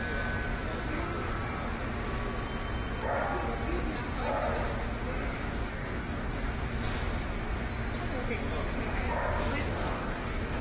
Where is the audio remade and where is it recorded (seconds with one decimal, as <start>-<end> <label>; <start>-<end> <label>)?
0.0-5.7 recorded; 5.7-6.3 remade; 6.3-9.7 recorded; 9.7-10.6 remade